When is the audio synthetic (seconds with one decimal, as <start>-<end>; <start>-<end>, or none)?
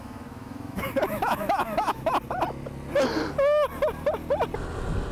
0.0-2.1